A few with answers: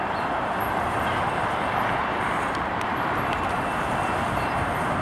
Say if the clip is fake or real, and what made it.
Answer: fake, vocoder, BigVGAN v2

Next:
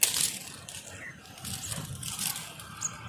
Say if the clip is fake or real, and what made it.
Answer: real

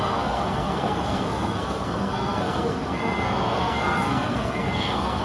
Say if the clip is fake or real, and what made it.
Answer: fake, codec, SNAC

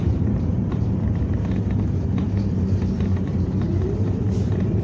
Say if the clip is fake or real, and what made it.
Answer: fake, vocoder, BigVGAN v2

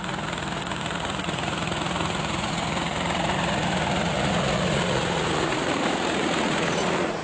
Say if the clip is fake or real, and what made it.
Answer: fake, vocoder, Vocos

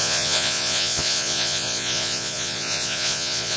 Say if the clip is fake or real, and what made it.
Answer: fake, vocoder, Vocos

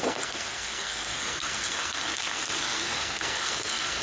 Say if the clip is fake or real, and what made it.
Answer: fake, codec, SNAC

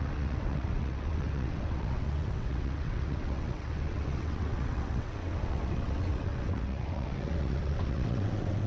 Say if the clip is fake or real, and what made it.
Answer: fake, vocoder, WaveNeXt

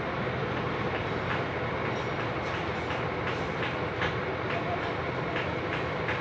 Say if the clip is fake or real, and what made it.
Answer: real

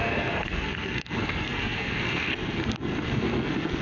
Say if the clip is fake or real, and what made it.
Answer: fake, codec, SNAC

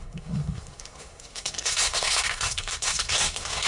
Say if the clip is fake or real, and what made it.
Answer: fake, codec, SNAC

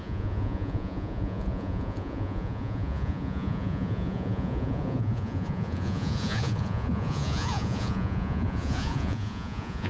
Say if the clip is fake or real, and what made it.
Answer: fake, vocoder, Vocos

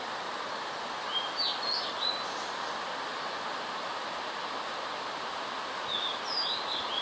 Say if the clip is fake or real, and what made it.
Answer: real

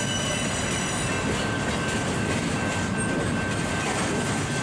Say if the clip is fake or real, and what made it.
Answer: real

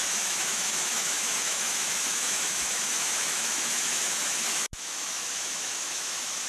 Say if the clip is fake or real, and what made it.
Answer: fake, autoencoder, DAC-VAE